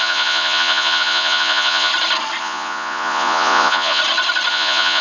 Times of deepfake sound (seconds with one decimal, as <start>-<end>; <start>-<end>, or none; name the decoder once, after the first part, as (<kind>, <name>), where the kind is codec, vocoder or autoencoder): 0.0-1.9 (vocoder, Vocos); 2.4-4.0; 4.5-5.0